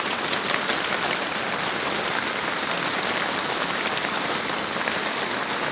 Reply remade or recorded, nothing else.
recorded